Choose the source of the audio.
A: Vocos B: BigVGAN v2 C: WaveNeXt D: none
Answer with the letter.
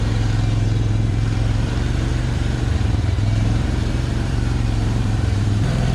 B